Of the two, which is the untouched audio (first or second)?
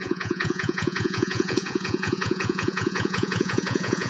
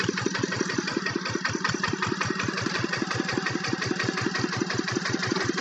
second